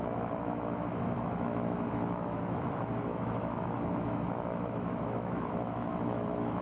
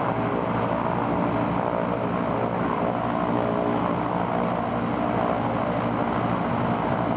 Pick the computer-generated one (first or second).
first